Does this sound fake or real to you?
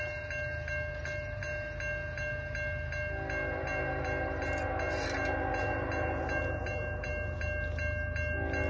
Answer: real